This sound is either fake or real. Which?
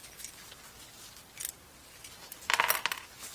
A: real